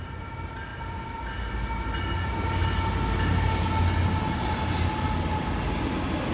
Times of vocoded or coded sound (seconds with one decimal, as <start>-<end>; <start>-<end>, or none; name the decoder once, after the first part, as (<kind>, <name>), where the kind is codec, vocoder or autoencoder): none